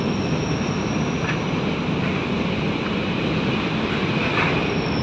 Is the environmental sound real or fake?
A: real